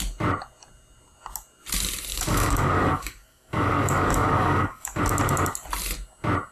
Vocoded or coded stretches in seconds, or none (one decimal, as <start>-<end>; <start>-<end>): 2.1-5.0